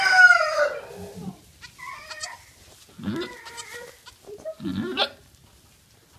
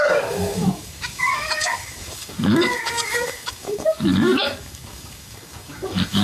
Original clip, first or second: first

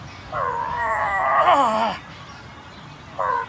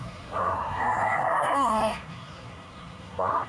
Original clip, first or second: first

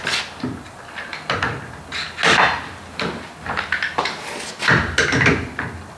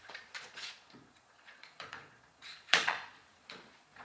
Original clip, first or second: first